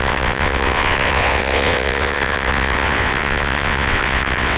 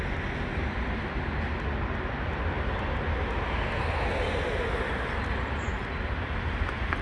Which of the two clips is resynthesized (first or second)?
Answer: first